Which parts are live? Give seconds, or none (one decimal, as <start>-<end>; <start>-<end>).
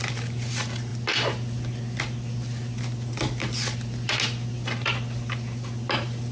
0.0-6.3